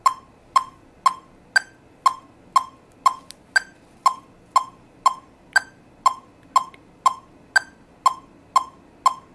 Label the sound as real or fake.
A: real